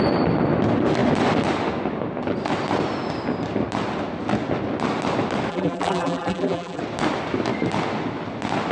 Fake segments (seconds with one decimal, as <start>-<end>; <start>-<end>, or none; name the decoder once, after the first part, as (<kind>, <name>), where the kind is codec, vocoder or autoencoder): 5.5-6.8 (vocoder, BigVGAN v2)